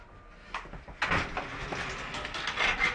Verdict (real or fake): real